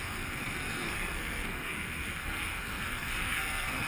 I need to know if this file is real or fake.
fake